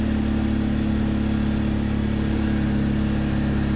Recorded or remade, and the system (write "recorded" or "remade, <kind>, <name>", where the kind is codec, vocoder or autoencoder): recorded